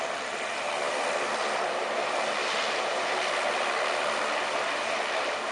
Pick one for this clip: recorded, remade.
recorded